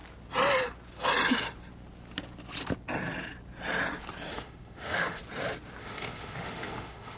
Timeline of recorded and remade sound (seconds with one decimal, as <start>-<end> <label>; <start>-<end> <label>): 0.0-4.3 recorded; 4.3-5.2 remade; 5.2-5.8 recorded; 5.8-7.2 remade

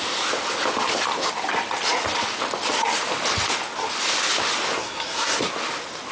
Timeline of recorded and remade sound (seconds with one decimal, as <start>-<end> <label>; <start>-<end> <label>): 0.0-4.8 recorded; 4.8-5.5 remade; 5.5-6.1 recorded

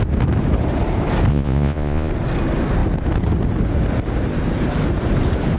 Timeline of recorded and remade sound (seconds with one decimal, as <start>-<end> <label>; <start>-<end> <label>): 0.0-1.3 recorded; 1.3-2.1 remade; 2.1-5.6 recorded

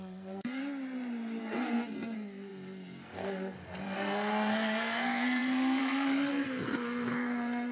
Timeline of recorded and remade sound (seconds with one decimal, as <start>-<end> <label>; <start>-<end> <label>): 0.0-0.6 remade; 0.6-1.4 recorded; 1.4-7.7 remade